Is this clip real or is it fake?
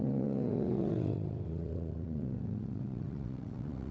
fake